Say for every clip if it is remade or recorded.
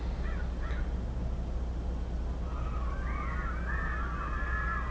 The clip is recorded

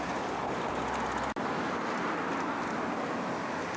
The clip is recorded